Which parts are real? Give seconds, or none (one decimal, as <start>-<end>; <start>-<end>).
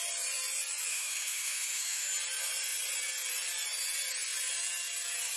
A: 0.0-0.9; 2.1-5.4